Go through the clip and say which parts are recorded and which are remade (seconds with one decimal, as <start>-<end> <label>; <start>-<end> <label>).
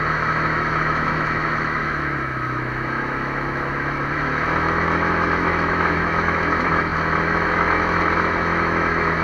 0.0-9.2 remade